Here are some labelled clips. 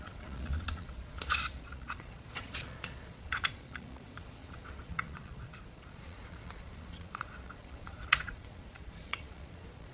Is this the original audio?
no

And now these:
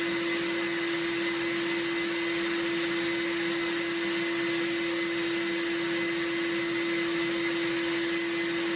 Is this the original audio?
yes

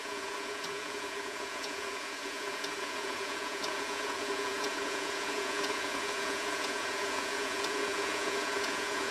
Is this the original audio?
no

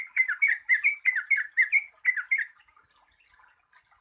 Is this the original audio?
yes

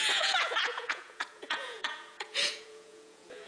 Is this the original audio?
no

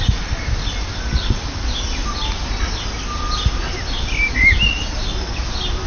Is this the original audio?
yes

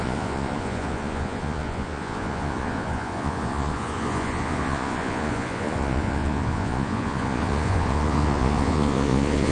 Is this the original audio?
no